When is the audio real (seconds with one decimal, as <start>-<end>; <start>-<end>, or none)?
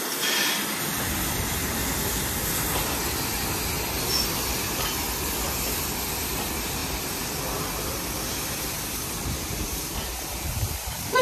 0.0-11.2